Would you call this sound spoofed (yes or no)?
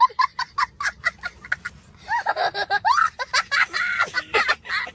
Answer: no